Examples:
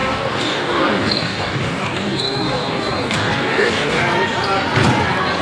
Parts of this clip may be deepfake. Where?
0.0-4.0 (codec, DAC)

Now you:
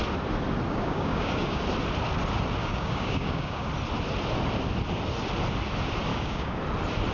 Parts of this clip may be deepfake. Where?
0.7-1.6 (codec, DAC); 2.6-3.7; 6.1-6.6

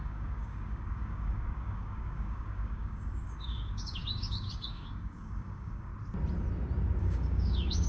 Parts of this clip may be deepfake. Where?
0.0-5.9 (codec, DAC); 7.0-7.9

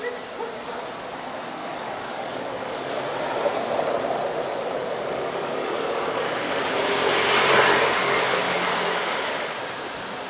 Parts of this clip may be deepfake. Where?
1.6-3.0 (codec, DAC); 4.8-6.6; 8.0-9.5

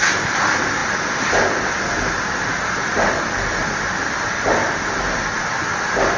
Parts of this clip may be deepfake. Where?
none

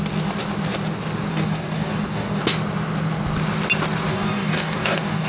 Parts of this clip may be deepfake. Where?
1.3-2.4 (codec, DAC); 4.1-5.3

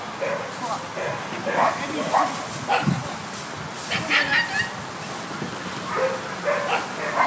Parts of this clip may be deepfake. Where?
none